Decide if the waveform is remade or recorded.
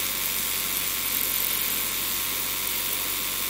recorded